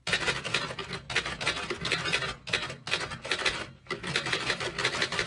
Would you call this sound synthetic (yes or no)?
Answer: no